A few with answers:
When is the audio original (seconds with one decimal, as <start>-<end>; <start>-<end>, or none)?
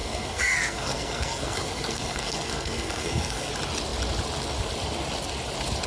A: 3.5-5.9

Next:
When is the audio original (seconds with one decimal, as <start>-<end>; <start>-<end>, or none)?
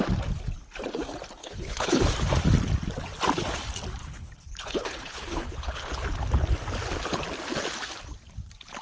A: 0.0-1.4; 2.0-4.0; 5.9-8.8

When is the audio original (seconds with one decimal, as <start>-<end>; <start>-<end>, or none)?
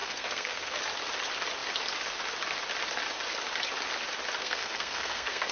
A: 0.8-4.4